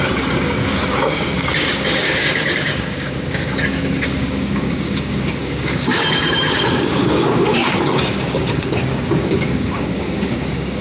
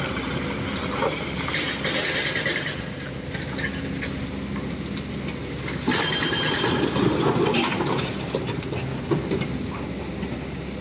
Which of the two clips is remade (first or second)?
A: first